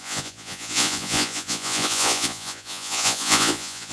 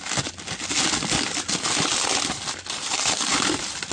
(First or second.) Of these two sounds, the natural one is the second